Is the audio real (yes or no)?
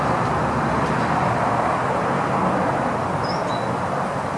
yes